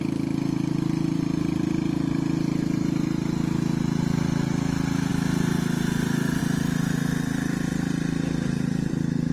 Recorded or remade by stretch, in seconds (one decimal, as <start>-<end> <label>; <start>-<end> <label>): 0.0-9.3 recorded